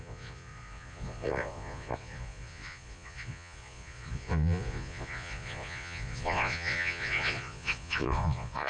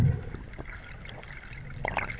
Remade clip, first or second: first